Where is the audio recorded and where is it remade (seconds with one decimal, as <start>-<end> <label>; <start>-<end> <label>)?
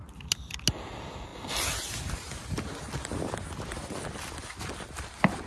0.0-5.5 recorded